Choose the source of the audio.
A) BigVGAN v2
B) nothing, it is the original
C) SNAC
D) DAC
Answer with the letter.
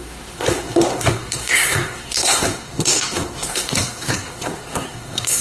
C